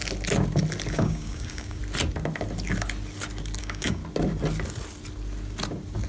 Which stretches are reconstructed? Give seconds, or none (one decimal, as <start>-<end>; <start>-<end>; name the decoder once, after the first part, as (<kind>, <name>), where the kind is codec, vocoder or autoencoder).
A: 0.9-1.8 (codec, DAC); 3.6-4.0